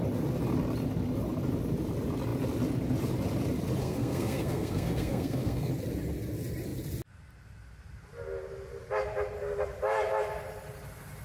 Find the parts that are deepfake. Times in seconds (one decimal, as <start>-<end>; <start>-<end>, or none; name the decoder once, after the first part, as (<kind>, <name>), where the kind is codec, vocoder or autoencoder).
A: 3.8-5.7 (codec, SNAC)